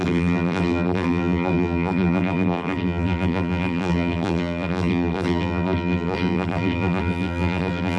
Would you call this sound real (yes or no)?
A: no